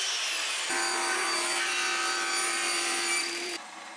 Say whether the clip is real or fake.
fake